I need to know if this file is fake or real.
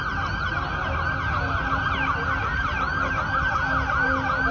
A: real